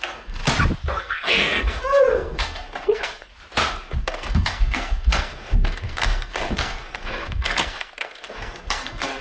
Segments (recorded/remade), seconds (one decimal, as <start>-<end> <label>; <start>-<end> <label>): 0.0-0.4 remade; 0.4-1.0 recorded; 1.0-3.3 remade; 3.3-4.0 recorded; 4.0-9.2 remade